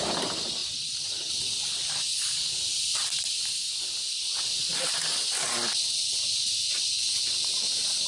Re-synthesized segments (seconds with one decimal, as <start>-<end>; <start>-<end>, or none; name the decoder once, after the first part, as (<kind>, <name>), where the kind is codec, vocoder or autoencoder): none